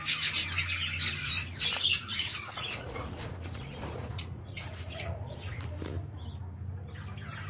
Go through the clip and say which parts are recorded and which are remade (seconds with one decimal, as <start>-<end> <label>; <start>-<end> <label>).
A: 0.0-1.2 recorded; 1.2-5.7 remade; 5.7-7.5 recorded